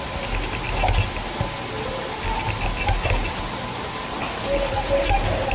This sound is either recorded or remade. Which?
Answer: recorded